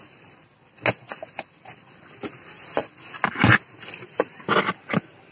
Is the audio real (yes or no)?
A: yes